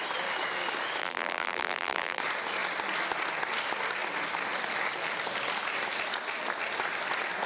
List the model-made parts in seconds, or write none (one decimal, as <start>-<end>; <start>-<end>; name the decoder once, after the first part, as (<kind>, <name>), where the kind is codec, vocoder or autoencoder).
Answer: 1.0-2.2 (vocoder, BigVGAN v2)